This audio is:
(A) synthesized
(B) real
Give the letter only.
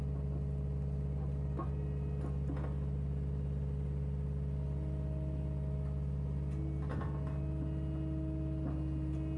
B